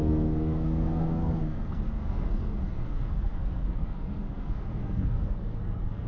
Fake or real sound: fake